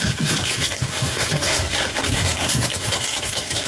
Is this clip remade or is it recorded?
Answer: remade